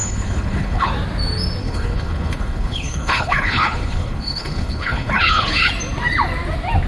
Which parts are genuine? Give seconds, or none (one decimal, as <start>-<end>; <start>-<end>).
0.9-1.6; 5.7-6.9